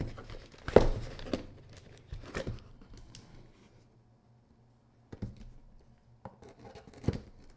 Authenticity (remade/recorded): recorded